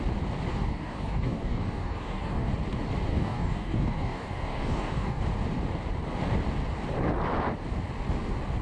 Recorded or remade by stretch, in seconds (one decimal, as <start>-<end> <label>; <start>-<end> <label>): 0.0-0.5 recorded; 0.5-2.5 remade; 2.5-3.1 recorded; 3.1-5.2 remade; 5.2-8.6 recorded